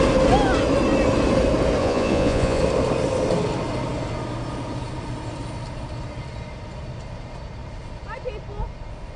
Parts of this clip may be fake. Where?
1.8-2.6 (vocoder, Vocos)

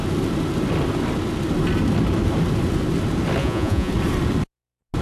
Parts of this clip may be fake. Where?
3.4-3.9 (vocoder, Vocos)